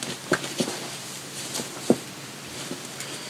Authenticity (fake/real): real